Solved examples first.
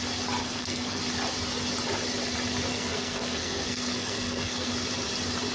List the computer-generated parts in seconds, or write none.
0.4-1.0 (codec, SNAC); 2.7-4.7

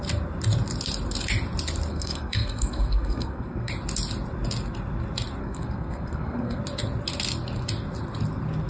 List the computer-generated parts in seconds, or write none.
1.9-3.7 (codec, SNAC); 5.4-6.6

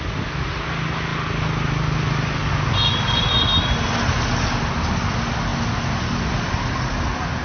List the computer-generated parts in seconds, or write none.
none

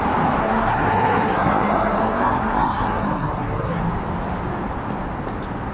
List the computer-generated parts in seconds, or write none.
0.4-3.8 (codec, SNAC)

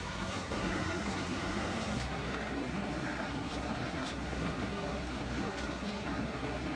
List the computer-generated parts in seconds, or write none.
0.0-6.8 (codec, SNAC)